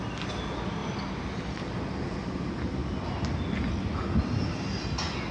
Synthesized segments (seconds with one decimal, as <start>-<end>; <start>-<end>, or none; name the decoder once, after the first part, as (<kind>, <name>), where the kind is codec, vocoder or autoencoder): none